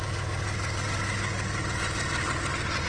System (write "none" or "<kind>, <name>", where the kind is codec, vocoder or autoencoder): none